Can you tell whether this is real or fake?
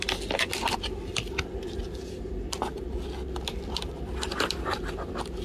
real